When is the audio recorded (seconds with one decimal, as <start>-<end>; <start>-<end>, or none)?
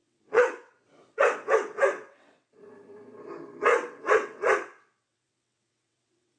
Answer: 2.6-3.7